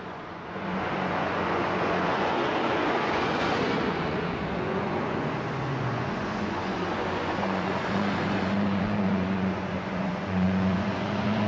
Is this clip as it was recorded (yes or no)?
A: no